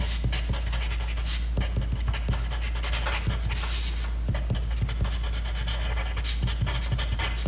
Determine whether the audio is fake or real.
real